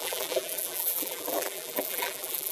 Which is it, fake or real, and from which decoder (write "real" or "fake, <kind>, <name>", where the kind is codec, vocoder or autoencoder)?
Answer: fake, vocoder, BigVGAN v2